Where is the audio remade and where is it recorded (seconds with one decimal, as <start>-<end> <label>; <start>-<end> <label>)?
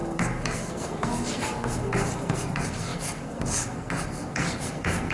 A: 0.0-5.1 remade